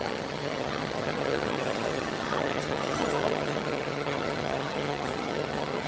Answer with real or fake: fake